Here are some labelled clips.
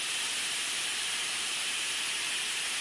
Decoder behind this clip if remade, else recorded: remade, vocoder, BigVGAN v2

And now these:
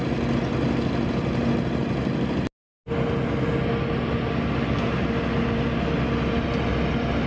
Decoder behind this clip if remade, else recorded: recorded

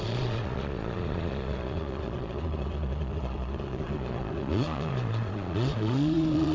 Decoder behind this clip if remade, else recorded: remade, vocoder, Vocos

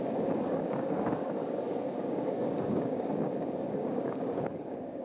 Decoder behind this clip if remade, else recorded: remade, codec, DAC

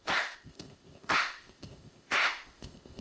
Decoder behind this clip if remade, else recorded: remade, codec, ZipCodec